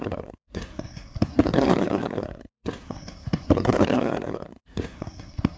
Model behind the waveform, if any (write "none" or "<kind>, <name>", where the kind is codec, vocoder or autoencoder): codec, SNAC